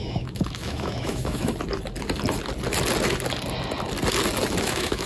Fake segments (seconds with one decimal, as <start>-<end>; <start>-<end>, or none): 0.0-1.5; 4.6-5.1